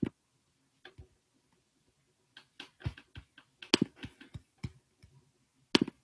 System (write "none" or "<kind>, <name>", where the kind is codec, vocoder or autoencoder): none